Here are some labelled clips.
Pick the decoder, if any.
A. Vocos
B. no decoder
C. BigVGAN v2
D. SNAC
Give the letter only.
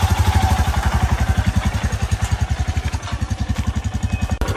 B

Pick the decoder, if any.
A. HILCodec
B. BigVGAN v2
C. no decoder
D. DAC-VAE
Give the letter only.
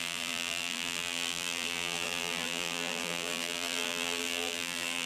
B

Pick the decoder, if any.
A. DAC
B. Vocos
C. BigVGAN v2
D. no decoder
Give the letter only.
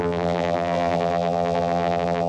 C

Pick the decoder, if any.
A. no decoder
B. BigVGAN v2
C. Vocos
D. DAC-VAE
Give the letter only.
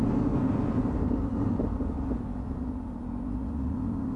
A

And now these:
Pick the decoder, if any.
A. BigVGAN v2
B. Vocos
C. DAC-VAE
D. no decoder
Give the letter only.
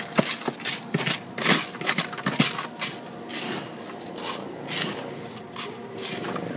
D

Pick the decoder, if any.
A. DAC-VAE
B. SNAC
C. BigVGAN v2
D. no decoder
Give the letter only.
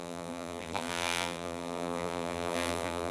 C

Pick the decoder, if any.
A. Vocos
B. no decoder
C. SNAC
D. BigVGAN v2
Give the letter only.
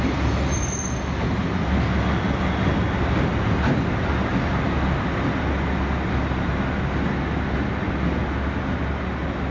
B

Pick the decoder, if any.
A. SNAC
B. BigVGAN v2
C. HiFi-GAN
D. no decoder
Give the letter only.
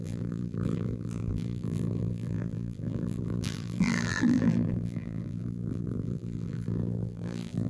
B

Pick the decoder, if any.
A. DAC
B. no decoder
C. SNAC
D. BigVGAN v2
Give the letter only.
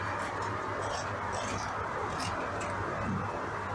B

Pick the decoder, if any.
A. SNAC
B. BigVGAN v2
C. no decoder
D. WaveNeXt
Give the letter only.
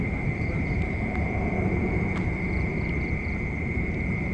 B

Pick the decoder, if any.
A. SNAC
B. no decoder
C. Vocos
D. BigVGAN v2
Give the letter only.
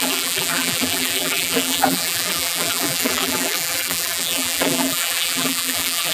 D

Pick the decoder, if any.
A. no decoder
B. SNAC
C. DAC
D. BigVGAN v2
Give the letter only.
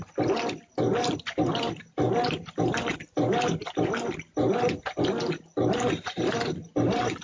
D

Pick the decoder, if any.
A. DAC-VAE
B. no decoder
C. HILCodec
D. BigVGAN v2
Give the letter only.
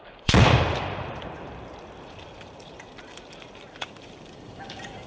D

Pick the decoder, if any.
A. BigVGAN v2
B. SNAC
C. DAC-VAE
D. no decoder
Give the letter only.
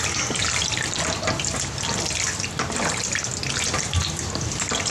D